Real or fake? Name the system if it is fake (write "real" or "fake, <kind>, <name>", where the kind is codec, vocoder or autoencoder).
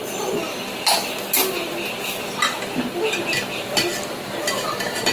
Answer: real